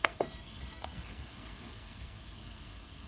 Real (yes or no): no